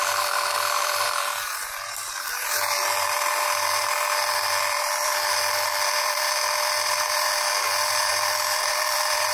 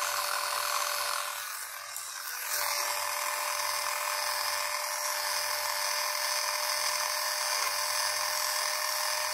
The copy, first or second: first